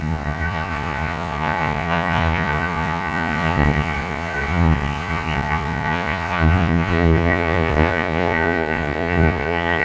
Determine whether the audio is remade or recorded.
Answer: remade